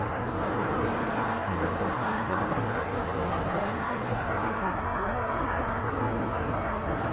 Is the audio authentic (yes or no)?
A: no